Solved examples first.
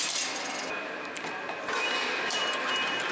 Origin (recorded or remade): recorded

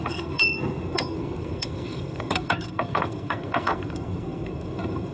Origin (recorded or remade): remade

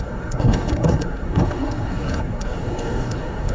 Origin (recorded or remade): remade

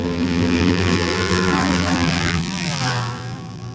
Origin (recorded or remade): remade